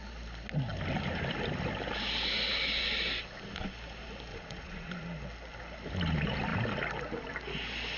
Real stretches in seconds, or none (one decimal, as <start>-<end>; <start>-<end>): 0.0-4.3; 4.9-8.0